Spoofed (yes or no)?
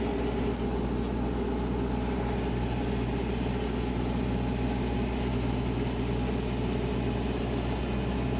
no